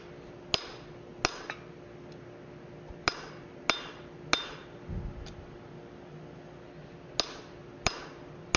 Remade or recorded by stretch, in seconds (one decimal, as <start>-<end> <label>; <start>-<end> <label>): 0.0-8.6 recorded